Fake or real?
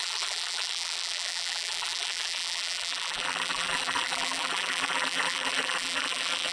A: fake